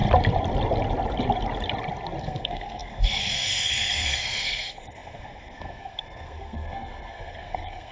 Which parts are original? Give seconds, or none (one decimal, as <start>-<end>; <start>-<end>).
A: 0.0-2.2